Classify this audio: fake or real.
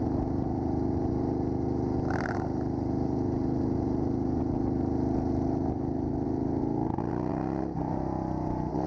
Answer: real